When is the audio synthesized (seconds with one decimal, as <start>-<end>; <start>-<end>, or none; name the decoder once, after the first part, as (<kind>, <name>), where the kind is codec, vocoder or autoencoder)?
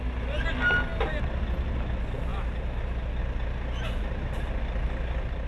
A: none